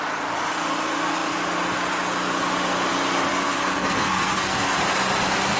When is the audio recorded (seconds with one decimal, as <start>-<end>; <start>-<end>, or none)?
0.0-3.3; 4.8-5.6